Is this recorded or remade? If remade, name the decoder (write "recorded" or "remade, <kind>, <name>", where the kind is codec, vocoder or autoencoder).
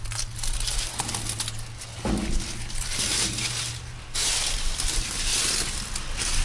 recorded